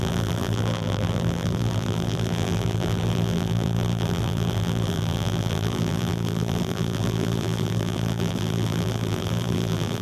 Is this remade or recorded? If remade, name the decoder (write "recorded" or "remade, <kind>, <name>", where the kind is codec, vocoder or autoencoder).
remade, vocoder, BigVGAN v2